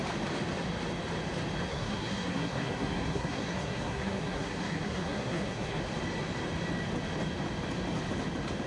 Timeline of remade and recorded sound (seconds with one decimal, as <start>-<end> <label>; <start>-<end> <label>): 0.0-1.7 recorded; 1.7-5.8 remade; 5.8-8.7 recorded